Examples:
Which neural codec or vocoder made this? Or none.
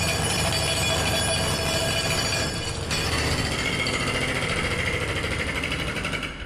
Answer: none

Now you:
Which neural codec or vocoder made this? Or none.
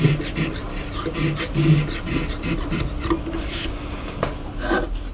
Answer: none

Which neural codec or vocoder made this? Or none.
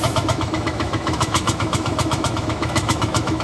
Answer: autoencoder, DAC-VAE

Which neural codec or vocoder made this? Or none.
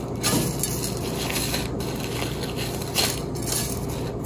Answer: none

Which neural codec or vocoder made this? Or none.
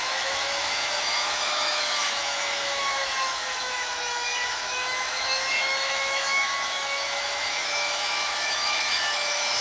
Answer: autoencoder, DAC-VAE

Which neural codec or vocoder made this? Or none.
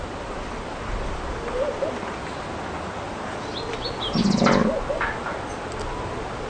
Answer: none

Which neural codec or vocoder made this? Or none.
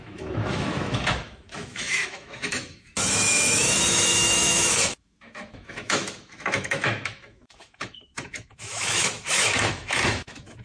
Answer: autoencoder, DAC-VAE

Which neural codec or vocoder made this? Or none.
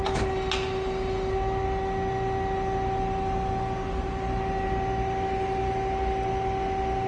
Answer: none